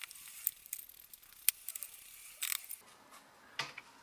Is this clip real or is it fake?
real